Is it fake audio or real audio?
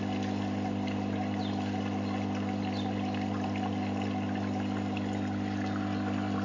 real